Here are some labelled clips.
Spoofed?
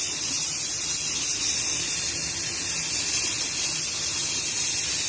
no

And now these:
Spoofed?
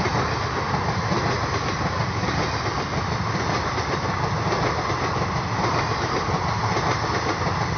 no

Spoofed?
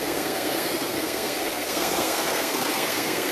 yes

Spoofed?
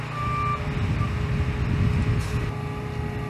no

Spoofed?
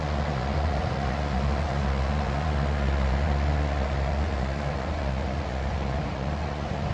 yes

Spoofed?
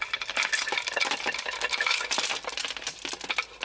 no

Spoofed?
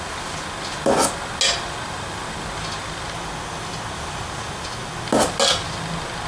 no